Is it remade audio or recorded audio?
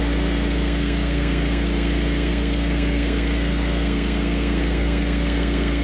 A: remade